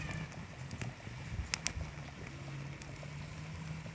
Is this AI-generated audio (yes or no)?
no